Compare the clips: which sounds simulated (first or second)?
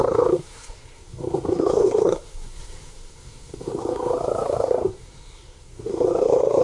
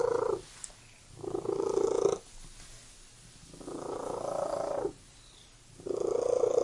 first